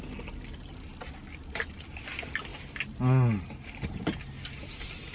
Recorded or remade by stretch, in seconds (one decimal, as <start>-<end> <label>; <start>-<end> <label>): 0.0-5.1 recorded